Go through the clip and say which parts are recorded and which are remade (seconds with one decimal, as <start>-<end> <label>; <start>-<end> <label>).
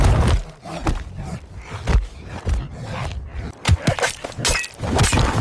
0.0-5.4 recorded